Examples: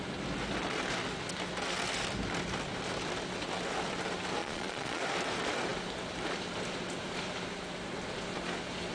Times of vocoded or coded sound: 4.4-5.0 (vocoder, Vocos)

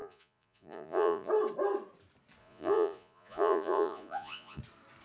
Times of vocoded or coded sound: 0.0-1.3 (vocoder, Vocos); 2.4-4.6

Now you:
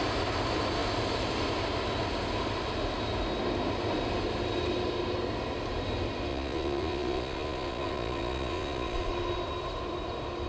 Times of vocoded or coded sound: 6.3-9.1 (vocoder, Vocos)

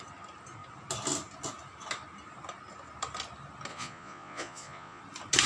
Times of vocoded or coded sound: 3.7-5.0 (vocoder, Vocos)

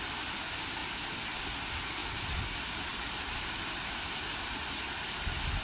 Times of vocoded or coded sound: none

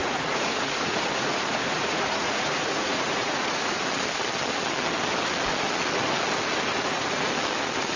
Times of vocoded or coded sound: 0.0-3.8 (vocoder, Vocos); 6.7-7.3

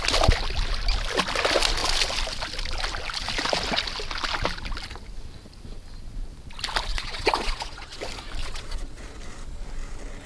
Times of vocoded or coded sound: 6.9-8.0 (vocoder, Vocos); 8.4-9.2